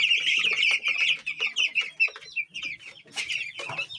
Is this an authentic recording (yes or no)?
yes